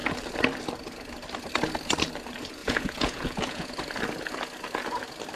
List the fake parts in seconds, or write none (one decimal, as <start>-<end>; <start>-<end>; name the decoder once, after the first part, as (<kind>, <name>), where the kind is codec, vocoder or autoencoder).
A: 2.6-3.7 (vocoder, Vocos)